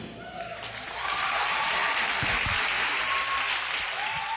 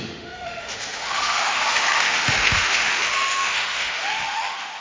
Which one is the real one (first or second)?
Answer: first